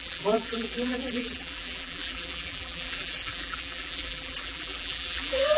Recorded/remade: remade